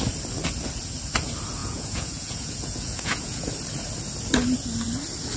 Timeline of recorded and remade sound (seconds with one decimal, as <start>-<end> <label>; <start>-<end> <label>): 0.0-1.6 recorded; 1.6-3.5 remade; 3.5-5.4 recorded